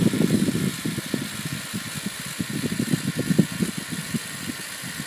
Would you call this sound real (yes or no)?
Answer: yes